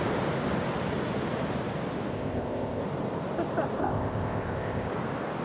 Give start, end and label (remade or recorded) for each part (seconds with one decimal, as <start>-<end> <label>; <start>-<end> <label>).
0.0-2.1 recorded; 2.1-2.8 remade; 2.8-3.8 recorded; 3.8-4.9 remade; 4.9-5.4 recorded